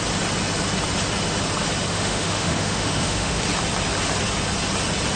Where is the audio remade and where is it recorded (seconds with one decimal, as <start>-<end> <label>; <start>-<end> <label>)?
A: 0.0-1.9 recorded; 1.9-3.4 remade; 3.4-5.2 recorded